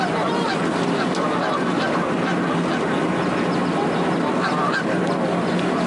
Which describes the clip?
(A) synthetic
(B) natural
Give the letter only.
B